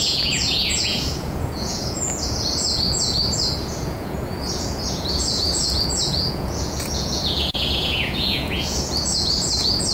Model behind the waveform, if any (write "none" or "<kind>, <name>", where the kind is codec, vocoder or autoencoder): vocoder, Vocos